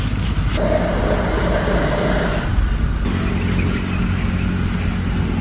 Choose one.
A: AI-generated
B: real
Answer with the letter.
B